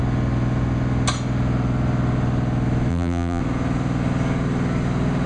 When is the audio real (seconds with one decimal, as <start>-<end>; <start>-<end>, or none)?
0.0-2.9; 3.4-5.3